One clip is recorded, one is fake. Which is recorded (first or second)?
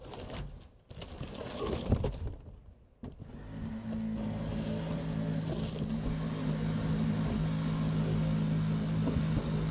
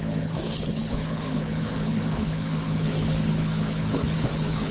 first